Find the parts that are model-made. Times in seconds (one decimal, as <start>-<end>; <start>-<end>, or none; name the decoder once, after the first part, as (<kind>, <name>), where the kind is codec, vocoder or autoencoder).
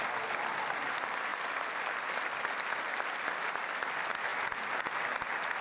1.3-1.9 (vocoder, BigVGAN v2)